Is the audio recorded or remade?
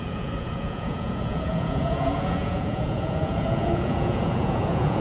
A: remade